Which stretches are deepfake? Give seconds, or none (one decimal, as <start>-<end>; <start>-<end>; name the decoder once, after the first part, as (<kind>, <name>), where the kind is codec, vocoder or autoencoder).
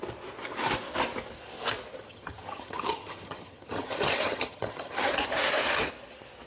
2.1-5.1 (vocoder, HiFi-GAN)